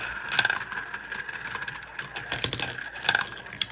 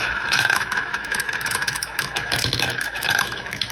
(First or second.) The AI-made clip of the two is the second